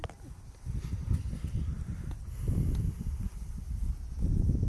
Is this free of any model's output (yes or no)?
yes